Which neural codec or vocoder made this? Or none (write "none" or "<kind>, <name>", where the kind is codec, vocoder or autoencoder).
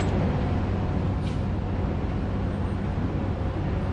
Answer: none